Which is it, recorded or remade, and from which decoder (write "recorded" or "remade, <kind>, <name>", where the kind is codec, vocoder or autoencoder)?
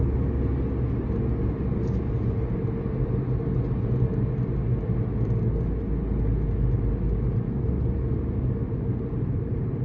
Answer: recorded